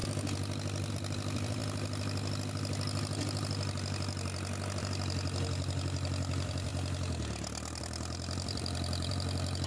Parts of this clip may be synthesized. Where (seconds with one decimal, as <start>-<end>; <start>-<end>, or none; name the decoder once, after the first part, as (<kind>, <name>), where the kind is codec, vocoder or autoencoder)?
0.9-1.6 (vocoder, BigVGAN v2); 4.8-6.7; 7.8-9.7